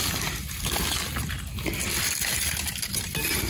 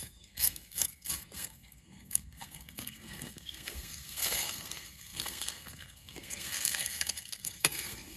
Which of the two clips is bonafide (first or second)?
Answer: first